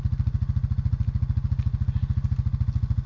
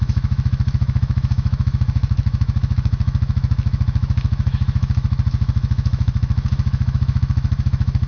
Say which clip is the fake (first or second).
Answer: second